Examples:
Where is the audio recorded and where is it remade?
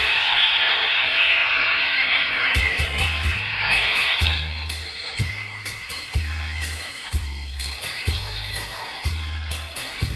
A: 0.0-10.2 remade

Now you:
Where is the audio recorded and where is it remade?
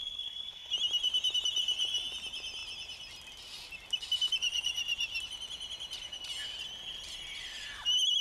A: 0.0-0.7 remade; 0.7-8.2 recorded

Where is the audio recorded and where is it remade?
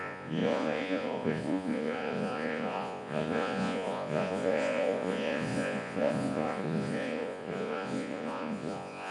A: 0.0-9.1 remade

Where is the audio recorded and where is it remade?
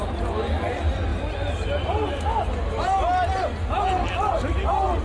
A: 0.0-5.0 recorded